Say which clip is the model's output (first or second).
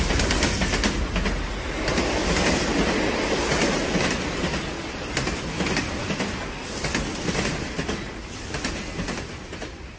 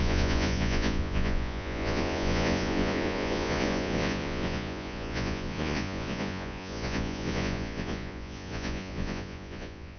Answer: second